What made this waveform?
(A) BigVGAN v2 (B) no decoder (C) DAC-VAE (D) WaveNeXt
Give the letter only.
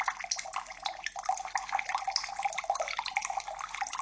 B